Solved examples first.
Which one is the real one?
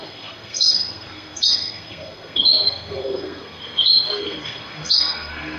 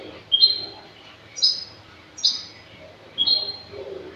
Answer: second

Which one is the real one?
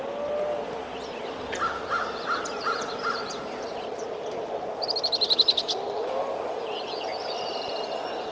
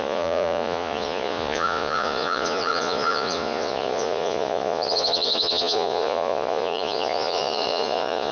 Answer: first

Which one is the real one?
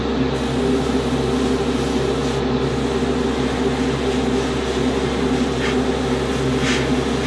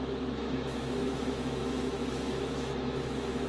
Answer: first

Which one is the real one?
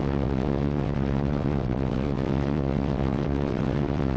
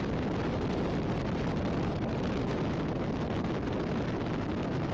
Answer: second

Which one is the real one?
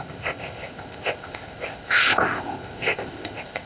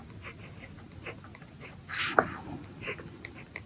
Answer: second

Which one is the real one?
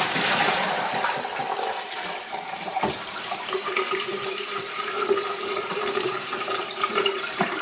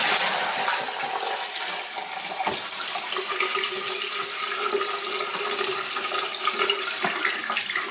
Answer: second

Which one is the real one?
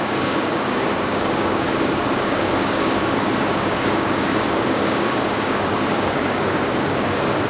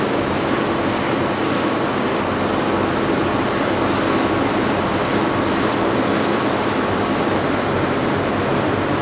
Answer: second